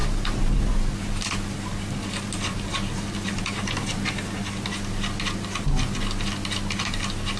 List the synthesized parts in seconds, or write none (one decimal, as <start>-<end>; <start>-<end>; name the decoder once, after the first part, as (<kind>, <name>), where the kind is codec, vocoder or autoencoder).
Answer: none